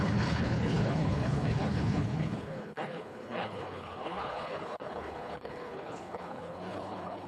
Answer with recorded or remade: remade